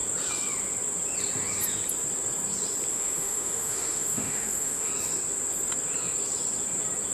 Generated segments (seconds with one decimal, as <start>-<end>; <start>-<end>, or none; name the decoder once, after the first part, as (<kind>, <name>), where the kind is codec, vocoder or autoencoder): 2.9-4.9 (autoencoder, DAC-VAE)